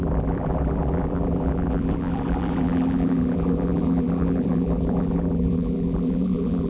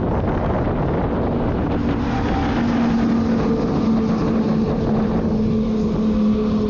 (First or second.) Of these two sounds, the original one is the second